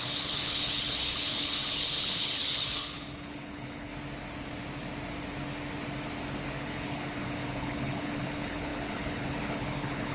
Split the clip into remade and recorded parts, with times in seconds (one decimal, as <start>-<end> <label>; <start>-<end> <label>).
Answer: 0.0-3.9 remade; 3.9-6.6 recorded; 6.6-10.1 remade